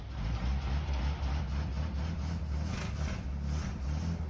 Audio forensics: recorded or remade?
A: recorded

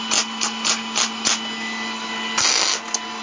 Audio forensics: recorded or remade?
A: recorded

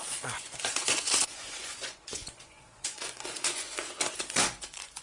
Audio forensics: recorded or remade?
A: remade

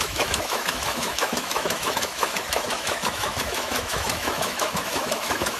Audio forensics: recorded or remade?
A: remade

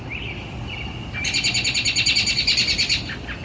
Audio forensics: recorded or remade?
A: recorded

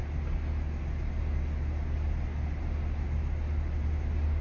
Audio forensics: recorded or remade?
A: recorded